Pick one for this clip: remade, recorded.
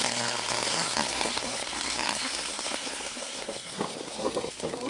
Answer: remade